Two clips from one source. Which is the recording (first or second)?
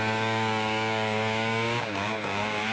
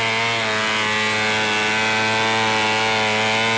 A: second